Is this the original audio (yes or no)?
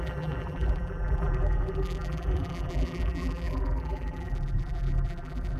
no